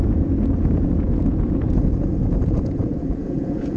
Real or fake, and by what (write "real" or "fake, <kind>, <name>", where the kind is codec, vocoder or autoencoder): fake, vocoder, Vocos